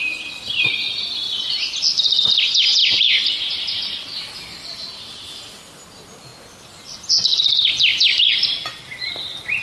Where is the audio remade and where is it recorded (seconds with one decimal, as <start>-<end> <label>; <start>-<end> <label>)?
0.0-2.8 recorded; 2.8-3.8 remade; 3.8-9.6 recorded